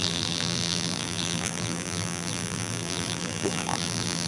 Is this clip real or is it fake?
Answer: fake